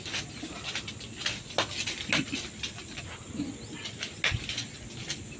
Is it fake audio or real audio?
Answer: real